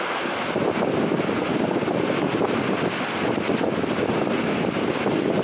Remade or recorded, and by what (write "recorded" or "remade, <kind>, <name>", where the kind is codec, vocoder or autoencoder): recorded